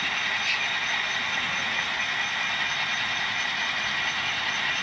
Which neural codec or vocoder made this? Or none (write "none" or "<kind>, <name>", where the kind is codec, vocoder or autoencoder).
none